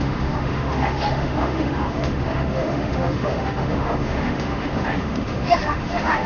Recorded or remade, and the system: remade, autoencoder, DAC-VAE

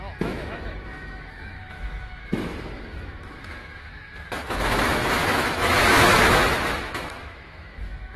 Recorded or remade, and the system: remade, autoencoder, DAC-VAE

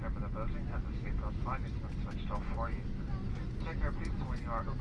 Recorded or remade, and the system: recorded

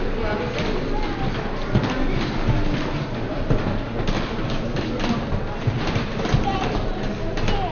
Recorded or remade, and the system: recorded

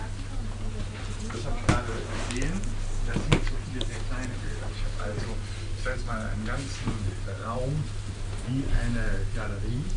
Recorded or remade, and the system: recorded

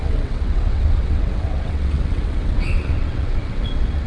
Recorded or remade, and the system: remade, vocoder, WaveNeXt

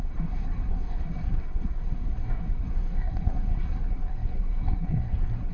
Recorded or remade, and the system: remade, codec, SNAC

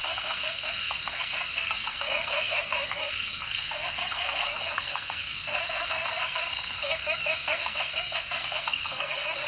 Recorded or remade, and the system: remade, codec, SNAC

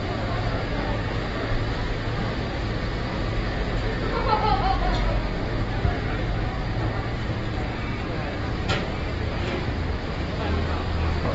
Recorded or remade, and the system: recorded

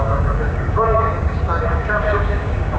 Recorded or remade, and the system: remade, codec, DAC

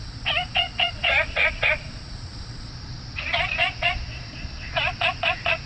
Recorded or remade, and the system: remade, vocoder, Vocos